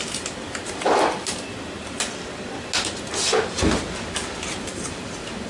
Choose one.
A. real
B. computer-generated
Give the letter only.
A